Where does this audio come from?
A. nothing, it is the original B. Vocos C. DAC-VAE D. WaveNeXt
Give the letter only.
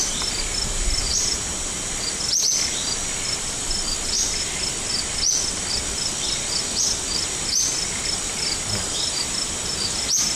A